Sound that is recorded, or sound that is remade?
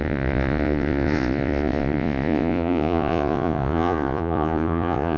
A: remade